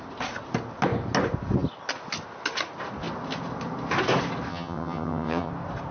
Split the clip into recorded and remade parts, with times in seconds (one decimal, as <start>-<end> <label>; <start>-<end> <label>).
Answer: 0.0-4.5 recorded; 4.5-5.5 remade; 5.5-5.9 recorded